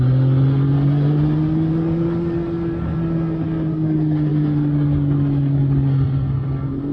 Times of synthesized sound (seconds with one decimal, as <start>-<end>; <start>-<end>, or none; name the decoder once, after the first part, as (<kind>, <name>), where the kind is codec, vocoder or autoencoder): none